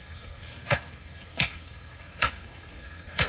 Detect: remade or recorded remade